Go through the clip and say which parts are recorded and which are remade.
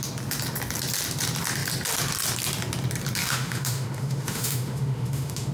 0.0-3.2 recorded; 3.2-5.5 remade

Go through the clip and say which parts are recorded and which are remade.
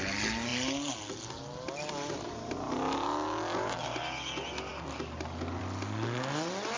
0.0-6.8 recorded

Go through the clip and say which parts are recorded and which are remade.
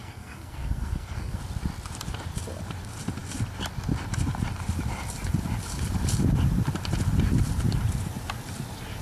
0.0-1.4 remade; 1.4-9.0 recorded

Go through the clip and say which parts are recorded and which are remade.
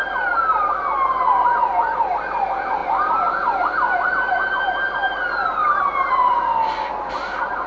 0.0-7.7 recorded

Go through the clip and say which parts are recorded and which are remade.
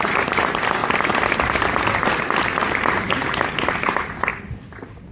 0.0-0.8 remade; 0.8-1.4 recorded; 1.4-4.3 remade; 4.3-5.1 recorded